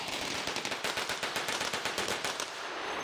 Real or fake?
fake